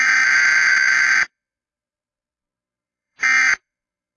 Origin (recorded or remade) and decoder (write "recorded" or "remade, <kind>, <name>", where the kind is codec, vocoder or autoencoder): remade, vocoder, BigVGAN v2